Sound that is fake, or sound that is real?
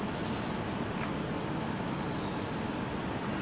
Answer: real